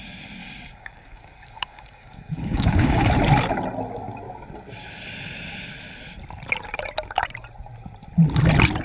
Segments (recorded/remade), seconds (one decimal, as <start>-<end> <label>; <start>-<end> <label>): 0.0-0.4 recorded; 0.4-3.1 remade; 3.1-8.8 recorded